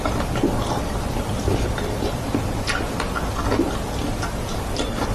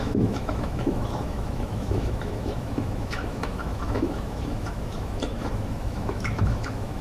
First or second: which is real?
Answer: first